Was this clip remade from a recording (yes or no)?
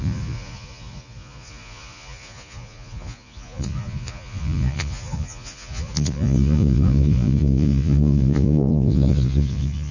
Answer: yes